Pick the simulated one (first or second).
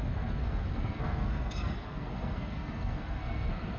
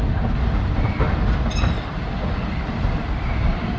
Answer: first